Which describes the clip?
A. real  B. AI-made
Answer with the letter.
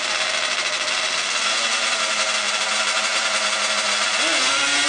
A